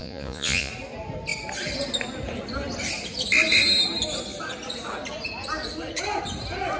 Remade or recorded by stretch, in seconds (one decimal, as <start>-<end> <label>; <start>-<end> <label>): 0.0-0.7 remade; 0.7-6.8 recorded